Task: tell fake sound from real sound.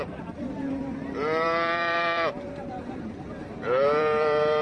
fake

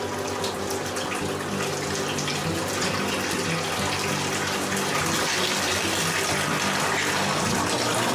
real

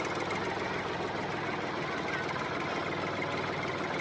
real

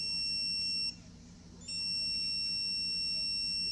real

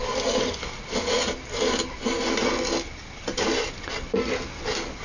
real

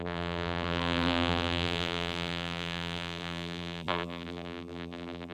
fake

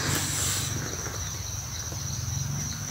real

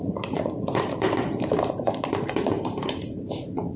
fake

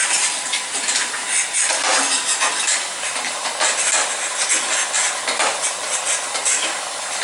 real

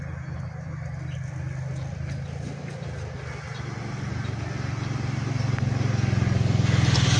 real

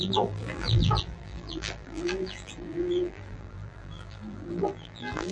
fake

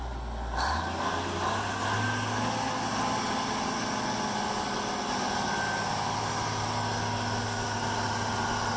real